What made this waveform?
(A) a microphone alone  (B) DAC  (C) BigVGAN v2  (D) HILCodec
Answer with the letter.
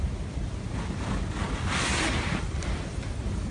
A